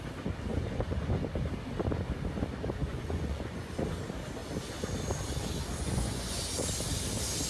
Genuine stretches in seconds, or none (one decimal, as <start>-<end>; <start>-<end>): 0.0-0.5; 1.1-2.8; 3.7-5.8; 6.4-7.5